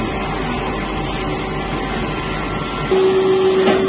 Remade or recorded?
recorded